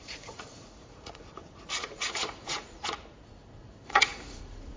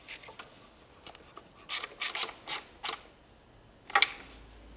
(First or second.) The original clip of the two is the second